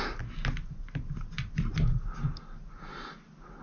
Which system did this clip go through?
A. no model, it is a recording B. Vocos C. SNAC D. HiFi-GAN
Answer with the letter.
A